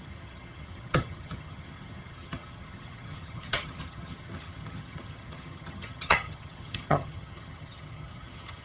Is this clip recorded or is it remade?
remade